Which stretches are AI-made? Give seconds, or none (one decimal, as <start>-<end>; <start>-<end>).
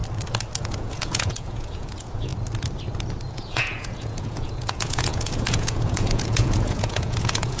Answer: 0.6-2.3; 3.3-7.6